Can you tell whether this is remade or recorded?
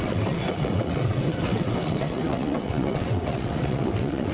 remade